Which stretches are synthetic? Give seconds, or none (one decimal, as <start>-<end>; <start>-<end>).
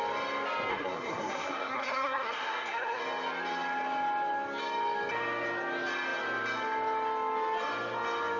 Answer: 0.7-3.0